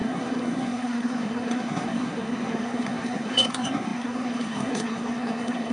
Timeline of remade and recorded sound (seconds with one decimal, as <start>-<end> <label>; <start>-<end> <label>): 0.0-5.7 remade